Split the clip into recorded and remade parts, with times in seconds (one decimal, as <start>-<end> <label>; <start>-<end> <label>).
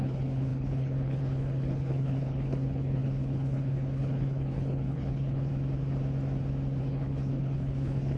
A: 0.0-5.5 remade; 5.5-6.8 recorded; 6.8-8.2 remade